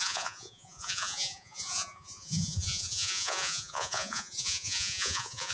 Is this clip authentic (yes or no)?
no